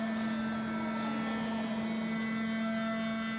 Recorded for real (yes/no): yes